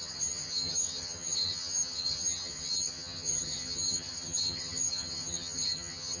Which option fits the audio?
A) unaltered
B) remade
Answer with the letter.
B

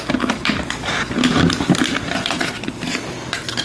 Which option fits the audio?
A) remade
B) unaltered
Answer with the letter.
B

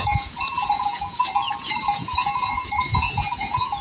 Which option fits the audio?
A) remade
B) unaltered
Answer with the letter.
A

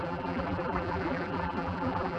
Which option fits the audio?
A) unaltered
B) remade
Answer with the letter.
B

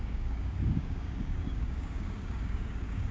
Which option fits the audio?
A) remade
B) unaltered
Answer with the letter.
A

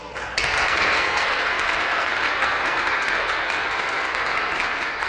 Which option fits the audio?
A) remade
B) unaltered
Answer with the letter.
A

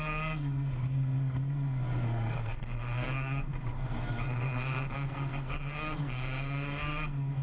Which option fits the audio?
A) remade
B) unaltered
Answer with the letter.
A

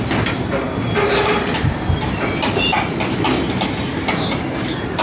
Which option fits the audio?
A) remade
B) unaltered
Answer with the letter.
B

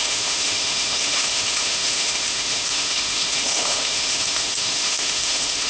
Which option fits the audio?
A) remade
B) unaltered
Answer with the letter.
A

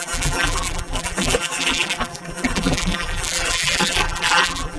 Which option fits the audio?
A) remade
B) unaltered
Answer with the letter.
A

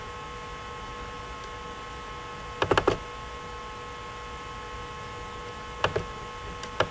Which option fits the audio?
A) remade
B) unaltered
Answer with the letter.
B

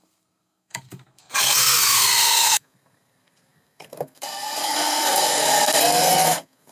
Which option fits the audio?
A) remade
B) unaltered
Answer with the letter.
A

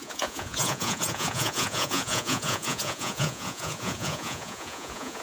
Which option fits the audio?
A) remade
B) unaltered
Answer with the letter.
A